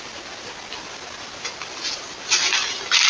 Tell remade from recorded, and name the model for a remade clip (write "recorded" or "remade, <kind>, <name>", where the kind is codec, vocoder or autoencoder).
recorded